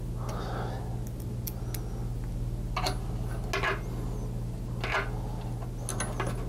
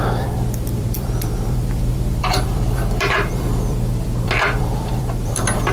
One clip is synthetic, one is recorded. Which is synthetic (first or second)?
second